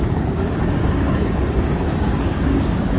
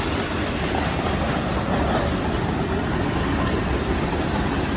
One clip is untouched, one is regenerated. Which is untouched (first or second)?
second